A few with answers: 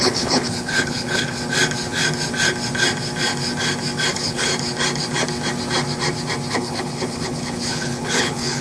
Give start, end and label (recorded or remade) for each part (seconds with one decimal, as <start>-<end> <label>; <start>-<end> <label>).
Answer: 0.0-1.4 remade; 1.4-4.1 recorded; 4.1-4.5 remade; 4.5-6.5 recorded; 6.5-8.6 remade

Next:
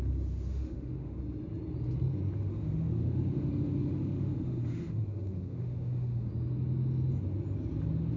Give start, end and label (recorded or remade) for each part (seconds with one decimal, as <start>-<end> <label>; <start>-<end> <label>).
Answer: 0.0-0.5 recorded; 0.5-1.2 remade; 1.2-2.5 recorded; 2.5-6.3 remade; 6.3-8.2 recorded

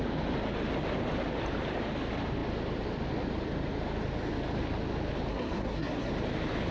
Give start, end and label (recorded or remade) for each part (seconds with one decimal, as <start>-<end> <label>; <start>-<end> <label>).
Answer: 0.0-5.3 recorded; 5.3-6.1 remade; 6.1-6.7 recorded